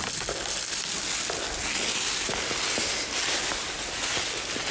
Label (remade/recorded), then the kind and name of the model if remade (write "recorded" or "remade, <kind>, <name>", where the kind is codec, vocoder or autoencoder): recorded